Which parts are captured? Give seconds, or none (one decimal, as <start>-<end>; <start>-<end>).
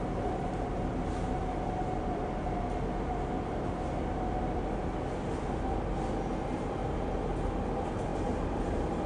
0.0-6.8; 7.5-8.1